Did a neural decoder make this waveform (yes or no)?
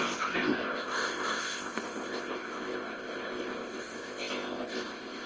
yes